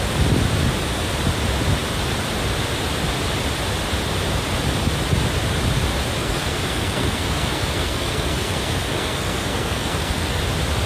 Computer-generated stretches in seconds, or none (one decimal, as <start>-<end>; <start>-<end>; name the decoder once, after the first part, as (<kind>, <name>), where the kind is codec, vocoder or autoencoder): 6.2-10.4 (codec, SNAC)